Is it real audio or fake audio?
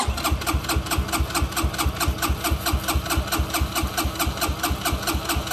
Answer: real